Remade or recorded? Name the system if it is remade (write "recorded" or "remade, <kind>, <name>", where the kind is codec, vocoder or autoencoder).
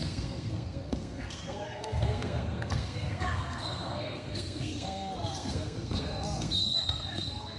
remade, codec, SNAC